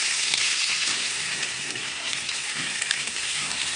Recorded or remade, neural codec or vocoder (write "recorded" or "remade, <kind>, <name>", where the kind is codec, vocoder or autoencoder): remade, codec, SNAC